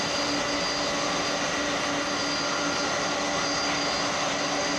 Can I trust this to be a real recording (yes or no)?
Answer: yes